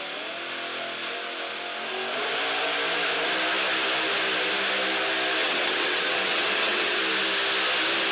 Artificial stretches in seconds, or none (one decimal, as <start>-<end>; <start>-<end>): 5.4-7.0